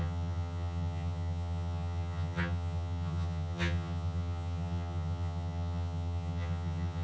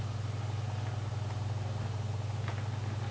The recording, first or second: second